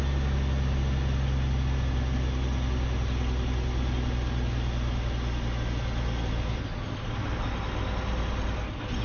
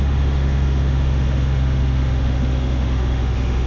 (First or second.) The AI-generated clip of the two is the second